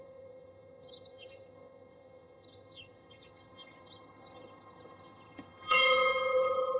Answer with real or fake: fake